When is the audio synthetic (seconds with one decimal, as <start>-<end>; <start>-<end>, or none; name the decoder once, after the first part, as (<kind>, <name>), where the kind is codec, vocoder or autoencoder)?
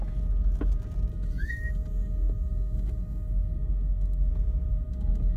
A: 1.1-4.3 (codec, SNAC); 4.7-5.4